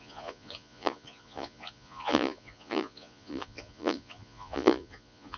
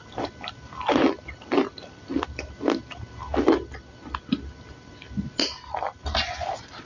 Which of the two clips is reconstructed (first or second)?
first